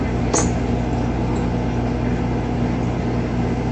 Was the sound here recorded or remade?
recorded